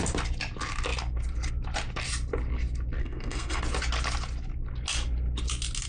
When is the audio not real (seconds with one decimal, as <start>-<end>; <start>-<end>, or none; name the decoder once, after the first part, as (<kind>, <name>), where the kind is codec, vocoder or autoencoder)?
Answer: 3.0-3.6 (codec, SNAC)